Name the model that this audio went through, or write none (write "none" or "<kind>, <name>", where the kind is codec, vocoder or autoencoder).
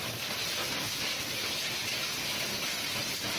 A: none